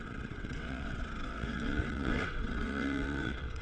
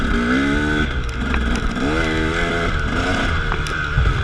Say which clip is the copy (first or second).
first